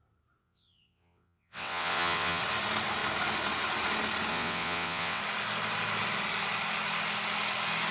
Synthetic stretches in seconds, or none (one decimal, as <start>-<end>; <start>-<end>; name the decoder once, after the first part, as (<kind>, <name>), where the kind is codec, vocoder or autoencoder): 0.4-2.4 (vocoder, WaveNeXt); 4.3-5.2